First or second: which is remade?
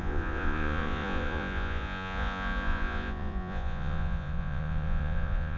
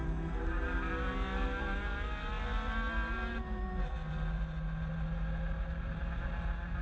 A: first